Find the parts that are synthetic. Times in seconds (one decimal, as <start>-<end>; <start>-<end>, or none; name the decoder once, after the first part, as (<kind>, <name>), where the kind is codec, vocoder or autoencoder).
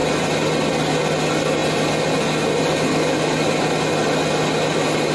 none